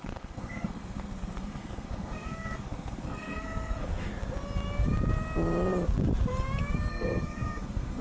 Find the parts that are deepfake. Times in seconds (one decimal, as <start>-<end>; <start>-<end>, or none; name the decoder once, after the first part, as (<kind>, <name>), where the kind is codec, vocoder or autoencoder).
0.0-4.1 (codec, SNAC); 6.9-8.0